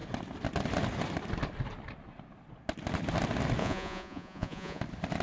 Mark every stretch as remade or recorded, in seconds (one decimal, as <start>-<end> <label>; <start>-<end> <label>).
0.0-3.6 recorded; 3.6-4.8 remade; 4.8-5.2 recorded